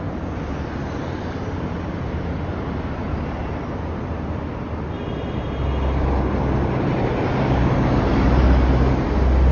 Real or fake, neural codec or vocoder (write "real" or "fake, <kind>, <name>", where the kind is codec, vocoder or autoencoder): real